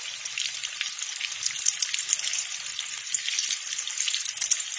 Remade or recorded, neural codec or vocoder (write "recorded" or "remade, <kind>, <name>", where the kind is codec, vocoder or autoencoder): recorded